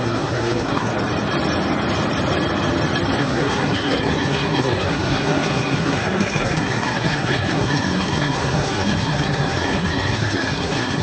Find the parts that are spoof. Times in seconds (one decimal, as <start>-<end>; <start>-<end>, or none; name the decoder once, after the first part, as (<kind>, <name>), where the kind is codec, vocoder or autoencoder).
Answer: 0.0-0.9 (codec, SNAC); 3.2-11.0